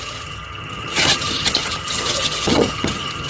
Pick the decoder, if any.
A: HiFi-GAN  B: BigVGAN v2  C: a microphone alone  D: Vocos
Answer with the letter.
A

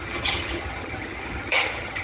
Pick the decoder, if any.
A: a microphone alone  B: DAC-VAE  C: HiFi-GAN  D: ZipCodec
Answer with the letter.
C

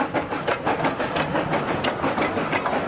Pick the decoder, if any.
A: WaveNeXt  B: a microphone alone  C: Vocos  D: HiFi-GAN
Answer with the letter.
B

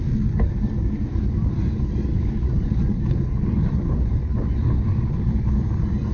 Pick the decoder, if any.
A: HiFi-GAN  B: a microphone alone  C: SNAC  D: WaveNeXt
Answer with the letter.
B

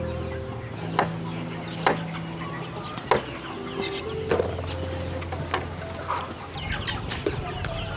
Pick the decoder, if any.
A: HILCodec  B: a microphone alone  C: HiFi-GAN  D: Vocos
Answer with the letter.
B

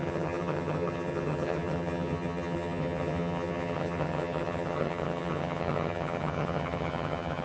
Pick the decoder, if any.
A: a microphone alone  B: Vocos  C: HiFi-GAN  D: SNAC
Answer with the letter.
C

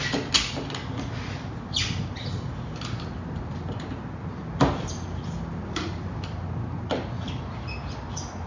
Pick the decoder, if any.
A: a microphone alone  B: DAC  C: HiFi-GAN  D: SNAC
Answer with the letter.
A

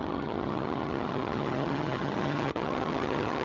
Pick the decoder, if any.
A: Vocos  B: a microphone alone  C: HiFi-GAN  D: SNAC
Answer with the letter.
C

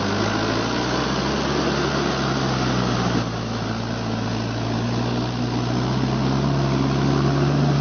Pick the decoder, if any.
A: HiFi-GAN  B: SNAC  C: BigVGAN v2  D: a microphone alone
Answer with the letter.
D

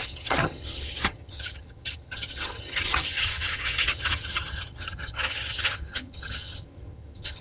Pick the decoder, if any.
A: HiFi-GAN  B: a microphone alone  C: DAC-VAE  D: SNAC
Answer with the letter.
A